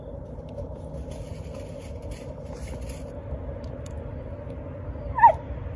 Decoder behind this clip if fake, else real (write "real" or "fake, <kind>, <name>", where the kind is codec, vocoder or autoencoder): real